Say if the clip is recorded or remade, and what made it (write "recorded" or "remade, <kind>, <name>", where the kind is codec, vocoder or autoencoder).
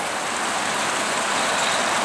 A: recorded